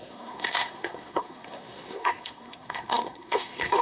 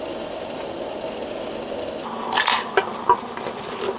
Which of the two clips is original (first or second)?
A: second